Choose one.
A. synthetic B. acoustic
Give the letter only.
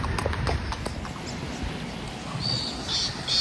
B